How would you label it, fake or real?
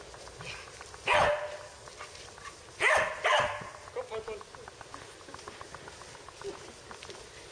real